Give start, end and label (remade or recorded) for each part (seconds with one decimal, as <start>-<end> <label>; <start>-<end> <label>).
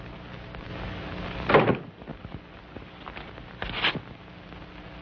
0.0-5.0 recorded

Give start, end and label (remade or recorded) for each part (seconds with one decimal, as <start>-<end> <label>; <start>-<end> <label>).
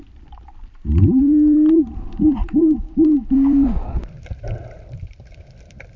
0.0-6.0 remade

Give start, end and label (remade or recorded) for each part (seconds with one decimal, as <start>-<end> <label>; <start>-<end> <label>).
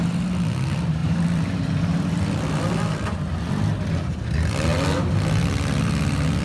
0.0-1.0 recorded; 1.0-3.7 remade; 3.7-6.4 recorded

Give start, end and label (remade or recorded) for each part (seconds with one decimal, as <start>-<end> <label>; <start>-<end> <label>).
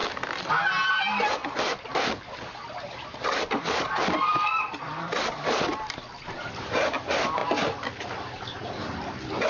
0.0-0.9 recorded; 0.9-7.4 remade; 7.4-8.8 recorded; 8.8-9.5 remade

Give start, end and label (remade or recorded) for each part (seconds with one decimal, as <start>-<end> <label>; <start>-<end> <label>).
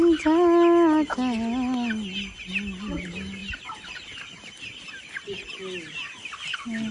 0.0-6.9 recorded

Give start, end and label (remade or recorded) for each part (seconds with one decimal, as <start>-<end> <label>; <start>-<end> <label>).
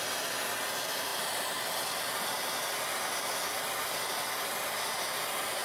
0.0-5.6 recorded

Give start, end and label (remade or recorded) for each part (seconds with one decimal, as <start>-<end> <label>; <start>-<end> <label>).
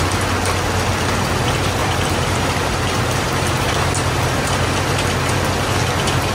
0.0-1.8 recorded; 1.8-4.7 remade; 4.7-6.3 recorded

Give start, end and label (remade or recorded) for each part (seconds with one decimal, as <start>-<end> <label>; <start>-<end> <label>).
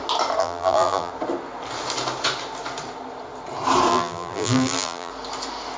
0.0-0.4 recorded; 0.4-1.1 remade; 1.1-3.9 recorded; 3.9-5.1 remade; 5.1-5.8 recorded